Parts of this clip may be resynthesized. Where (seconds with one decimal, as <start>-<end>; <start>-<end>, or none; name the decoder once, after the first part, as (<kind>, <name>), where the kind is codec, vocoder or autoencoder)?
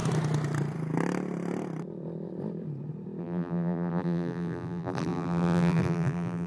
3.2-6.5 (vocoder, BigVGAN v2)